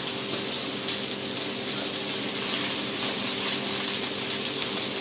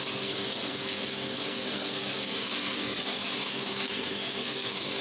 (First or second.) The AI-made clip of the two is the second